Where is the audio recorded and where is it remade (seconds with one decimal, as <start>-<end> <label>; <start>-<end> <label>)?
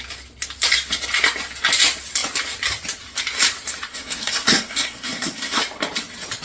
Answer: 0.0-3.9 recorded; 3.9-5.6 remade; 5.6-6.4 recorded